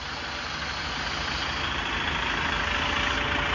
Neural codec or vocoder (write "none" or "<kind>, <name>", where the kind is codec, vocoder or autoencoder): none